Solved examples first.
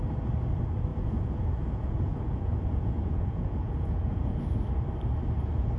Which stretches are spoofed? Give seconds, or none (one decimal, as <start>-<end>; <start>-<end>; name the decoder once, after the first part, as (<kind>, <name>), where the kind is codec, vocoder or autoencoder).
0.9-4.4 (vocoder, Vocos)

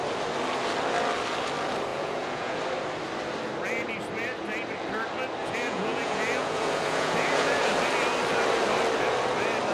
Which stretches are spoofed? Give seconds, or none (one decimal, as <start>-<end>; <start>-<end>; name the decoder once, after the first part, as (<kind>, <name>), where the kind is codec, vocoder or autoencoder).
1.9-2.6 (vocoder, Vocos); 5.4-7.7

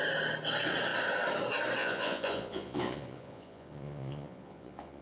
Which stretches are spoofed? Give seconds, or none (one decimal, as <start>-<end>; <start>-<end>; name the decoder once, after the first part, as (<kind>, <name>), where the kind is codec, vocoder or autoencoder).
1.8-5.0 (vocoder, Vocos)